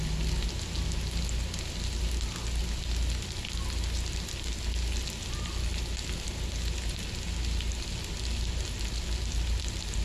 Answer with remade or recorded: recorded